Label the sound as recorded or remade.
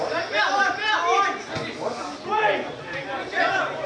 recorded